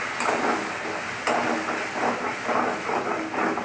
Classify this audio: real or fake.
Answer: real